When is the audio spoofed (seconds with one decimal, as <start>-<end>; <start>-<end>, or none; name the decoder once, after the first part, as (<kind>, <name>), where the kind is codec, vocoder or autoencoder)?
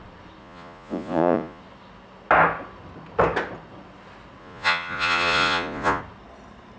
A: 0.4-1.6 (vocoder, Vocos); 4.4-6.0